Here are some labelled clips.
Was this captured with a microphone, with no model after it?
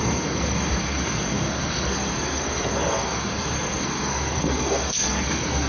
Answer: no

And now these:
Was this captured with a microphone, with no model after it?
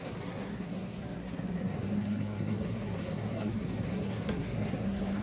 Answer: no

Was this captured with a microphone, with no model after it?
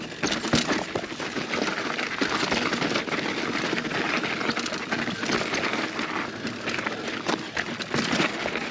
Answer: yes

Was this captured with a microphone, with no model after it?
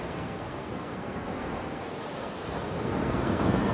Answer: no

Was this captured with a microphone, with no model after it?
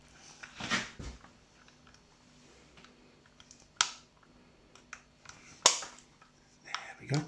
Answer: yes